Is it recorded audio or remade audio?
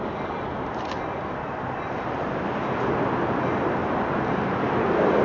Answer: recorded